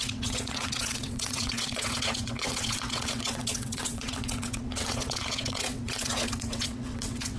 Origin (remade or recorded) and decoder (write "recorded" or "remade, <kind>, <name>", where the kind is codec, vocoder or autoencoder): remade, vocoder, WaveNeXt